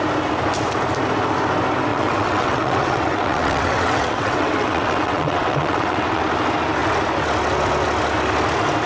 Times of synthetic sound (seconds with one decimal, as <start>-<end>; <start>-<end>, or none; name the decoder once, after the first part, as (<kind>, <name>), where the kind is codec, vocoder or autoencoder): 1.9-6.2 (vocoder, WaveNeXt)